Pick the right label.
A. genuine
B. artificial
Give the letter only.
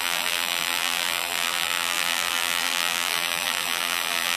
B